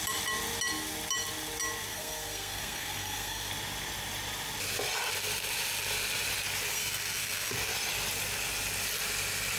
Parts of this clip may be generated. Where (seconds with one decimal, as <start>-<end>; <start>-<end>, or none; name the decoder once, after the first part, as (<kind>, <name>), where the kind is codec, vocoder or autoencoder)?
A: 1.9-3.5 (codec, SNAC); 6.7-7.5

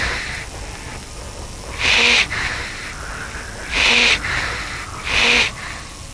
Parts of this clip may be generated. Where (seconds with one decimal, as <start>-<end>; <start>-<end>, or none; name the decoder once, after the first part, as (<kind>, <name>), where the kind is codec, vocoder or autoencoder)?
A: none

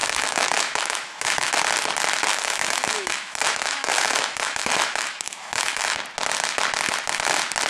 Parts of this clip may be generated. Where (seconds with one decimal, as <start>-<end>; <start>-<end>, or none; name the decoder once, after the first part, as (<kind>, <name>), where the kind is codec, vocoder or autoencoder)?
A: 0.0-1.5 (autoencoder, DAC-VAE); 2.3-6.0

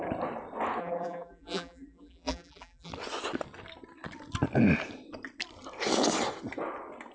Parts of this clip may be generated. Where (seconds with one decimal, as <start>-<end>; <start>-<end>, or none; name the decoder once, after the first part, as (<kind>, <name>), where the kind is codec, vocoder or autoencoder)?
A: 0.8-2.9 (vocoder, BigVGAN v2)

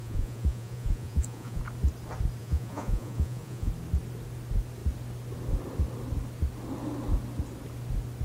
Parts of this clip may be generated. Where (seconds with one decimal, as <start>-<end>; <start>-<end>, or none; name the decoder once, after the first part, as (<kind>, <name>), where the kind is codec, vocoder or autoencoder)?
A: 0.0-1.6 (vocoder, Vocos); 2.4-3.7

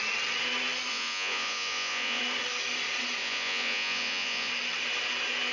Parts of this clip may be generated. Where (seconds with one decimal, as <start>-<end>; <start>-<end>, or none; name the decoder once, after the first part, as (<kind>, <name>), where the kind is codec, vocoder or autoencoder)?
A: 0.9-2.2 (vocoder, Vocos); 3.2-4.5

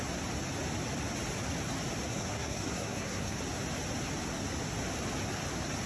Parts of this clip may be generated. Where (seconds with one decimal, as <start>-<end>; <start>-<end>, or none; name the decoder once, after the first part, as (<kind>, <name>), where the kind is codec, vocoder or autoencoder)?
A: 2.1-3.4 (codec, SNAC)

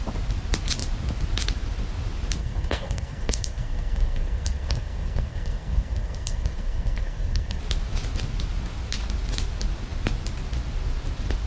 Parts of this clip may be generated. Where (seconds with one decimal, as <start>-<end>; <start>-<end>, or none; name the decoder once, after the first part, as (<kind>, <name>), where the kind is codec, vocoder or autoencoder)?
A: 2.4-7.6 (codec, SNAC)